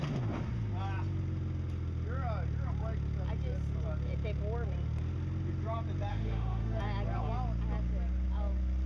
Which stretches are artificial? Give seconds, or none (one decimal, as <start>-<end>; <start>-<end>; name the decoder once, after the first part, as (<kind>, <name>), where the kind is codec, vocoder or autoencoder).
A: 6.1-6.8 (autoencoder, DAC-VAE)